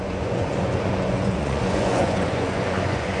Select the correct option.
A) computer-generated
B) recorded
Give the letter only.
A